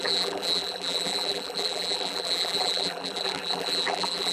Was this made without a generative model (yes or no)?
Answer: no